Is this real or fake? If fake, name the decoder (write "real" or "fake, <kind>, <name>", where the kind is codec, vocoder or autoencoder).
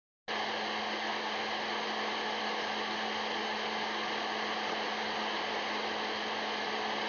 real